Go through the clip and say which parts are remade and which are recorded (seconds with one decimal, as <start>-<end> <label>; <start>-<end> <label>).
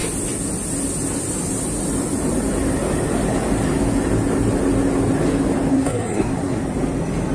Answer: 0.0-5.7 recorded; 5.7-6.6 remade; 6.6-7.3 recorded